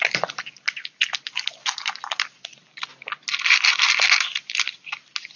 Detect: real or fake real